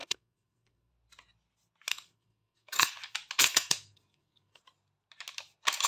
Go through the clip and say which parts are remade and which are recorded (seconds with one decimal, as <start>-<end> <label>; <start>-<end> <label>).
0.0-0.9 remade; 0.9-1.9 recorded; 1.9-2.9 remade; 2.9-3.4 recorded; 3.4-4.6 remade; 4.6-5.9 recorded